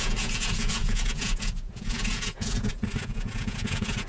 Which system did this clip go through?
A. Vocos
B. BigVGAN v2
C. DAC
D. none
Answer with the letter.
A